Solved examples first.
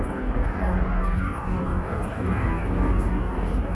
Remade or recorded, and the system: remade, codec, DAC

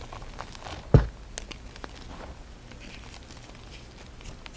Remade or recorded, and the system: recorded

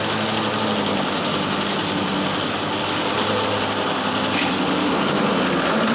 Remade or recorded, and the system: recorded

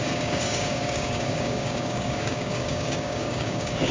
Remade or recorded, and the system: remade, codec, DAC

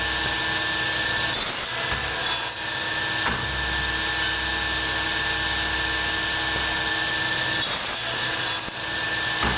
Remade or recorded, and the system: recorded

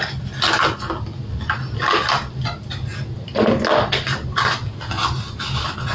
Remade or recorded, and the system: recorded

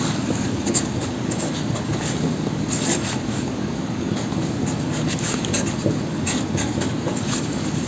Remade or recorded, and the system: remade, codec, DAC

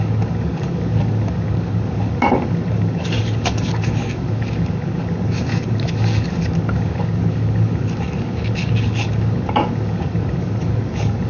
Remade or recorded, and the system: remade, codec, DAC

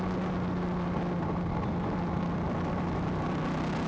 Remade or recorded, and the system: recorded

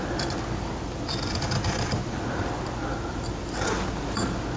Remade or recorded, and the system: recorded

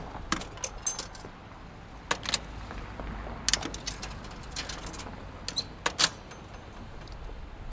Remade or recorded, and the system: recorded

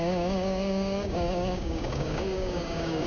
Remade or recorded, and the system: remade, codec, DAC